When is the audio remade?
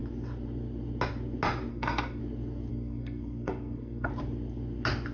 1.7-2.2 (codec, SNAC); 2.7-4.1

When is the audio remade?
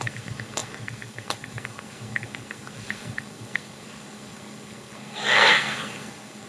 0.0-6.5 (codec, SNAC)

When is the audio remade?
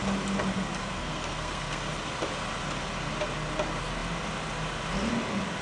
0.8-1.8 (codec, SNAC)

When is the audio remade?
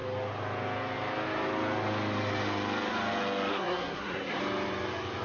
3.5-4.4 (codec, SNAC)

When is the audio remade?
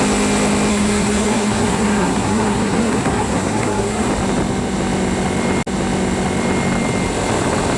0.7-4.1 (codec, SNAC)